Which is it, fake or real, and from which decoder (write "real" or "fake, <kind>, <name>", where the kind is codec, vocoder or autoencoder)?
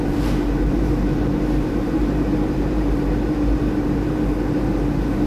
fake, vocoder, BigVGAN v2